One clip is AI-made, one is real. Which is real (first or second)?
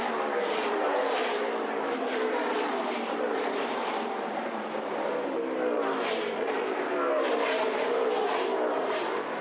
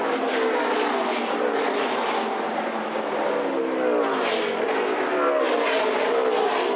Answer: second